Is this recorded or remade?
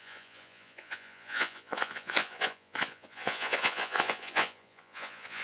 remade